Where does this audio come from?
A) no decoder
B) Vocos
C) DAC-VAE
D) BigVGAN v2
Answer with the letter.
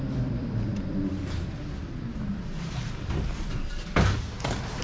D